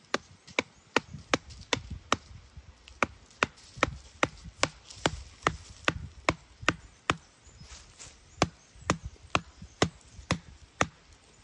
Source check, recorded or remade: recorded